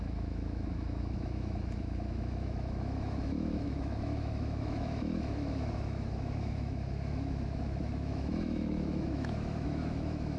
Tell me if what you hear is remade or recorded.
remade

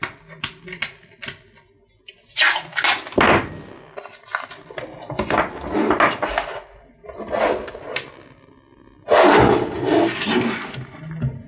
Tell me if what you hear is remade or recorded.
recorded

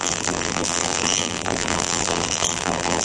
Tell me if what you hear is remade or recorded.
remade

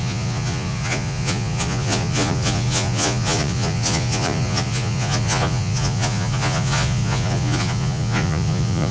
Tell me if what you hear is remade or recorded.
remade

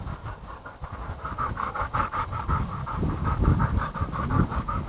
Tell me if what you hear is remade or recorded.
remade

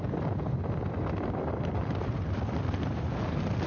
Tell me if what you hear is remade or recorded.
recorded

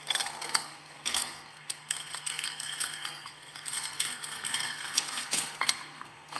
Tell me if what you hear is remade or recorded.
remade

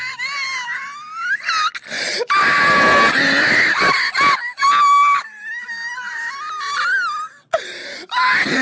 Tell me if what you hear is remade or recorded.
recorded